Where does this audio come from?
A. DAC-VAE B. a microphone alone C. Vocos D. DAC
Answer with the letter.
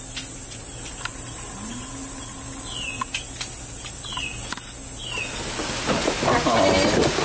B